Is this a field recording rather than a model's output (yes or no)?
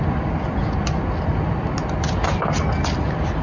yes